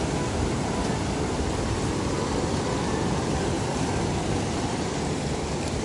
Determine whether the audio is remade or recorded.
recorded